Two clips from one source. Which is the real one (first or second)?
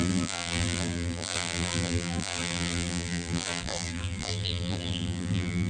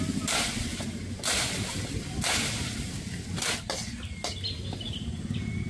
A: second